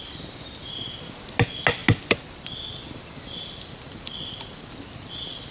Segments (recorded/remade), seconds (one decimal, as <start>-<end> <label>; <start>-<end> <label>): 0.0-5.5 recorded